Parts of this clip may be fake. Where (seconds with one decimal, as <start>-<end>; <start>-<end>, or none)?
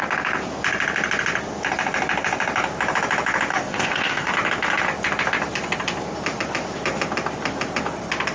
3.5-4.3